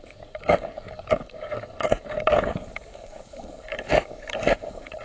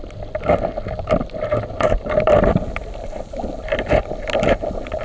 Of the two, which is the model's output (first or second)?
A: first